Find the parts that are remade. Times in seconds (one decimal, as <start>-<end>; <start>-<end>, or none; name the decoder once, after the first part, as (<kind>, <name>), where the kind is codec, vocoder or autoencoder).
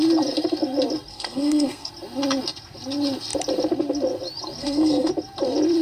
1.1-1.9 (codec, SNAC); 4.6-5.1